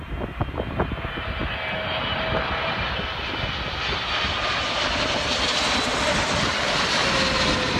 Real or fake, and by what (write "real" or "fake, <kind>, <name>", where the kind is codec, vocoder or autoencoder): real